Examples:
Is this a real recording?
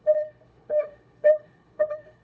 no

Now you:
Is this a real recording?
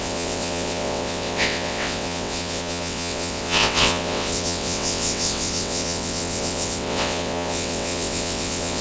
no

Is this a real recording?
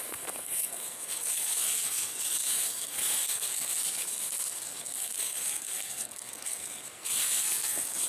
no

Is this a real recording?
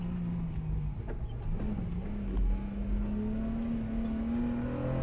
yes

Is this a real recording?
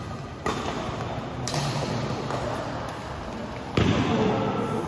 yes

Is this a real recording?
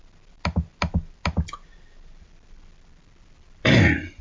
yes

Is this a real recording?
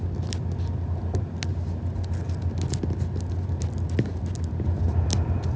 yes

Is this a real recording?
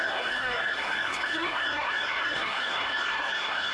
no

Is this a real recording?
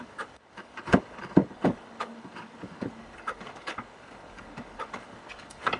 no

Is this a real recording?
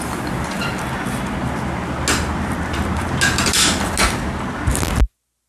yes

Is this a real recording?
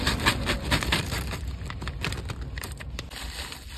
yes